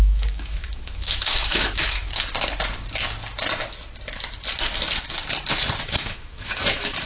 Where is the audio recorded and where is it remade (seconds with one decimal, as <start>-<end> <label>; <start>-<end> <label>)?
0.0-2.1 remade; 2.1-5.8 recorded; 5.8-7.1 remade